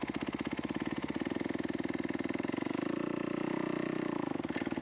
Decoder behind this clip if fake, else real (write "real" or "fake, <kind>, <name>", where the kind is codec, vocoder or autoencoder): real